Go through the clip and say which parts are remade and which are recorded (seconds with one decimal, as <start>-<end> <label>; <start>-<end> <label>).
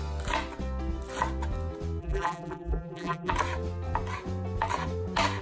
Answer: 0.0-2.0 recorded; 2.0-3.3 remade; 3.3-5.4 recorded